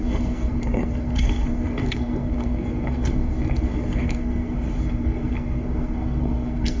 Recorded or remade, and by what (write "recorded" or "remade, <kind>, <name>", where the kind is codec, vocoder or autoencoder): remade, codec, SNAC